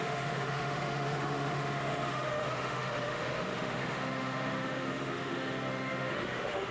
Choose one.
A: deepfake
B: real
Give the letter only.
A